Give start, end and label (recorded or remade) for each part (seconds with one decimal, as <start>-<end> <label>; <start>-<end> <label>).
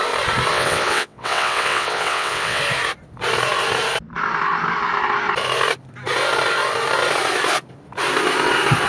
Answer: 0.0-0.5 recorded; 0.5-2.6 remade; 2.6-8.9 recorded